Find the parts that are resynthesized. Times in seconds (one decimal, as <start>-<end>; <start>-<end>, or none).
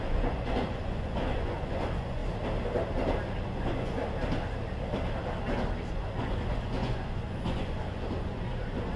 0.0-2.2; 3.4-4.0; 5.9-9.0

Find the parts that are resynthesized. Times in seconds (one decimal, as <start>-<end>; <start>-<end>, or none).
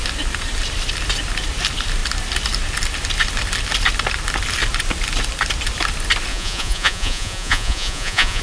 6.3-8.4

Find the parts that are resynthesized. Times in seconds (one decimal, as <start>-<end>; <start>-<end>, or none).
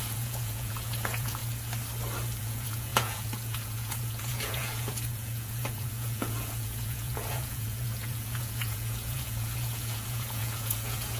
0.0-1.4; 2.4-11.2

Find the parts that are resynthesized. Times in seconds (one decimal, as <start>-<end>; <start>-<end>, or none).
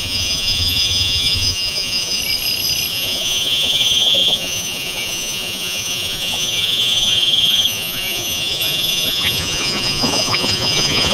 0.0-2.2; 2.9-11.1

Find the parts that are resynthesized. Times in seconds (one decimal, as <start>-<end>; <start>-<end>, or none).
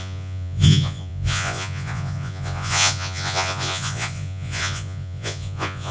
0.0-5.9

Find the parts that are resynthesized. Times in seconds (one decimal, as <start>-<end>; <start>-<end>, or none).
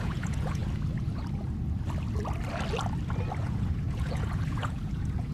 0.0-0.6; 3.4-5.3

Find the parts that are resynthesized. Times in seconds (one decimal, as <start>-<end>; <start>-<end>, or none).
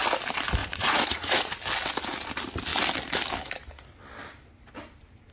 0.6-1.6